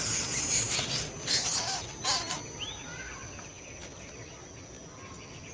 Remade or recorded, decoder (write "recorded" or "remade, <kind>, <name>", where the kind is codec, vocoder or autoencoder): recorded